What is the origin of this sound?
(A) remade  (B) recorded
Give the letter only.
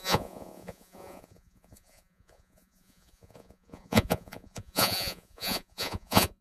A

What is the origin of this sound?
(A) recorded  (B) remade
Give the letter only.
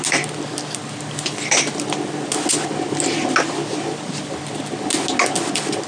A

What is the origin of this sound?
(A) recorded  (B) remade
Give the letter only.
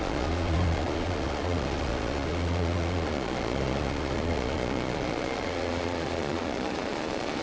B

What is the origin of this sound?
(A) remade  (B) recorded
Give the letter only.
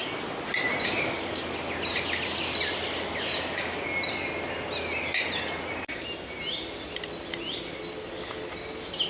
B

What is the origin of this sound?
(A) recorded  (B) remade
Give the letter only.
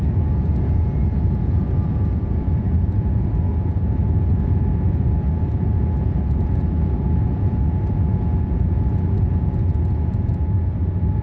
B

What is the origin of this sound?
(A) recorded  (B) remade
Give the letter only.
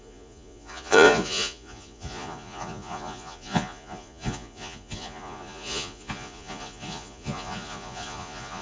B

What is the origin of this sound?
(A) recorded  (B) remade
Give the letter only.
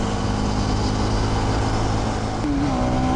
A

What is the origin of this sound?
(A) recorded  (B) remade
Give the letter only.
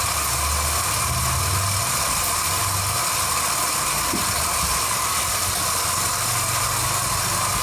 A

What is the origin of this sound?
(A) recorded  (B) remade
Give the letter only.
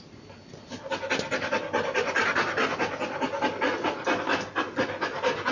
A